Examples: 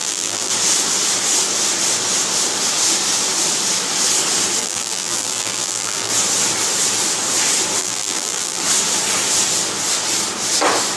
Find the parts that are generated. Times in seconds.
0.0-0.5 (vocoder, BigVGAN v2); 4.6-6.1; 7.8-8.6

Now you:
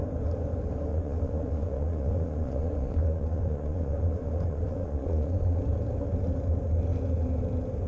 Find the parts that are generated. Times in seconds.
0.9-5.6 (vocoder, Vocos)